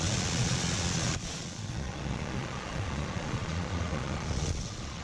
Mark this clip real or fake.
fake